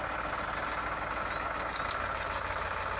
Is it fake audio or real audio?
real